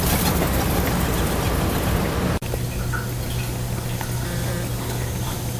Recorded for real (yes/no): yes